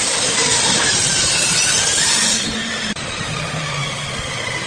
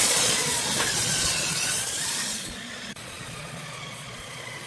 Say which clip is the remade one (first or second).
second